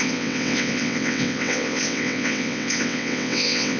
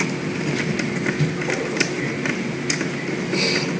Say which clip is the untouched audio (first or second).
second